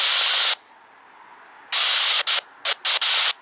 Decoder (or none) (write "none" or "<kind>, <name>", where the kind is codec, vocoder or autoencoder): none